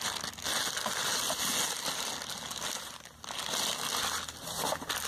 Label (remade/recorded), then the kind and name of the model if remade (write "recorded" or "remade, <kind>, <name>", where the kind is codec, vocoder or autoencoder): recorded